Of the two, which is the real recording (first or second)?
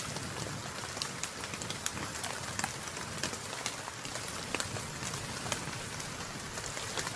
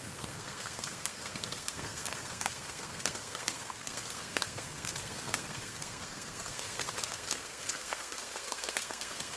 first